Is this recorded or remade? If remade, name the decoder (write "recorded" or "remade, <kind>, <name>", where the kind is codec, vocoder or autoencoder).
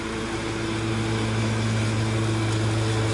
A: recorded